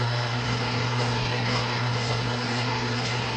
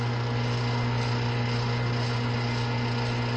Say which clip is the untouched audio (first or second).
second